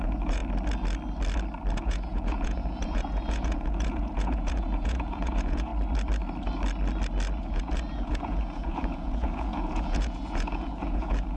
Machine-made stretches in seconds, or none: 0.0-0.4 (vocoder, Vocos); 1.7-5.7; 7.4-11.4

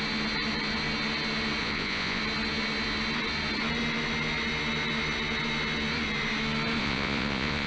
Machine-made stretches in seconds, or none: 1.6-2.2 (vocoder, Vocos); 6.8-7.7

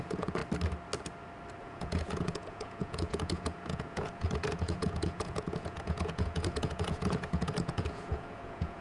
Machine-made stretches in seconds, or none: 0.0-0.4 (vocoder, Vocos); 1.6-8.8

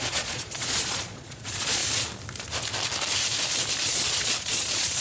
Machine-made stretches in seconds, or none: 0.0-1.8 (vocoder, Vocos); 3.9-5.0

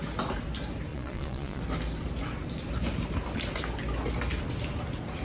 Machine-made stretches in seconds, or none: 0.9-1.6 (vocoder, Vocos)

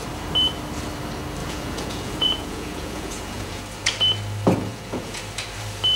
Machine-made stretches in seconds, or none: 1.4-3.6 (vocoder, Vocos); 4.7-5.2

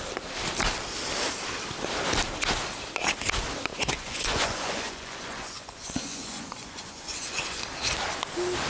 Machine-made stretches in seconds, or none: 3.7-7.6 (vocoder, Vocos)